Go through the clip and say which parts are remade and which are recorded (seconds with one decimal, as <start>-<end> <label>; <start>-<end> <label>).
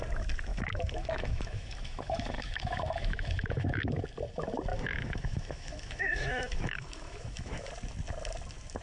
0.0-0.5 recorded; 0.5-4.0 remade; 4.0-4.7 recorded; 4.7-7.7 remade; 7.7-8.8 recorded